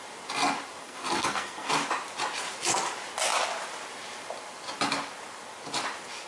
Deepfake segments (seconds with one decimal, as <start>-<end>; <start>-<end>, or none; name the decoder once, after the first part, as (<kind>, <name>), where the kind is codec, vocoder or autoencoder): 0.8-1.7 (codec, SNAC)